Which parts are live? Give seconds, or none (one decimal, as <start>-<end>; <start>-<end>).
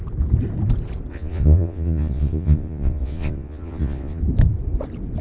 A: 0.0-1.1; 4.2-5.2